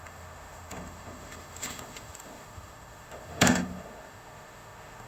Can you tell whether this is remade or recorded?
remade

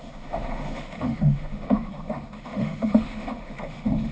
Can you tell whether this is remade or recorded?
remade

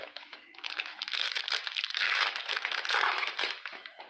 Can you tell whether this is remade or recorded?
remade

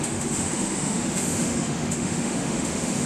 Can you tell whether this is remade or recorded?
remade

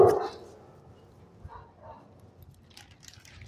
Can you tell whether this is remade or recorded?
recorded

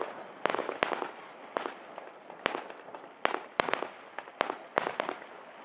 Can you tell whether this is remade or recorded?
recorded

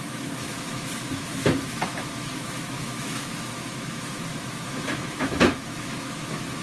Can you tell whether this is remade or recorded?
remade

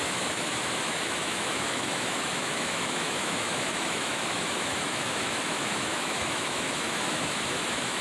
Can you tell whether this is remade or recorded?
remade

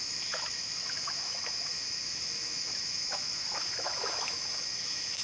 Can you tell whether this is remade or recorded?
remade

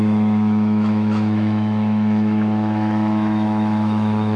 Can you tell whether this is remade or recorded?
remade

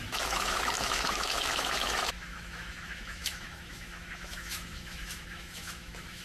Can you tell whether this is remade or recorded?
remade